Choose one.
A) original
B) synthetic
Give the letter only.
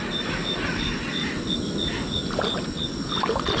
A